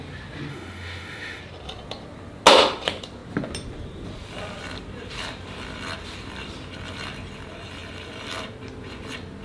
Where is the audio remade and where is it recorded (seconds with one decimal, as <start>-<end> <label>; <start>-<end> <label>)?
0.0-0.5 recorded; 0.5-1.4 remade; 1.4-9.4 recorded